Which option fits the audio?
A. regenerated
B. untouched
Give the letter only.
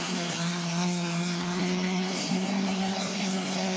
A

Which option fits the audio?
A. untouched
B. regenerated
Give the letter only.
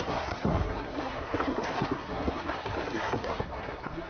B